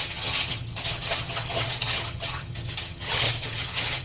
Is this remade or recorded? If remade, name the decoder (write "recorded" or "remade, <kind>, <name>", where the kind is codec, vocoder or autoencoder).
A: remade, vocoder, HiFi-GAN